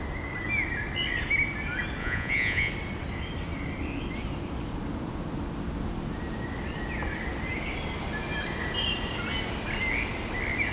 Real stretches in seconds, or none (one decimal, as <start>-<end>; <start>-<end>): 0.0-2.0; 2.7-10.7